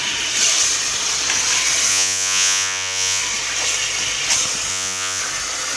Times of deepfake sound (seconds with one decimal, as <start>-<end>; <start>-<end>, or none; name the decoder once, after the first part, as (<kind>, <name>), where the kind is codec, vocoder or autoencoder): 1.9-3.2 (vocoder, Vocos); 4.7-5.2